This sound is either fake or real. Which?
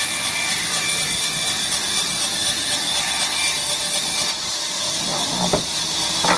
real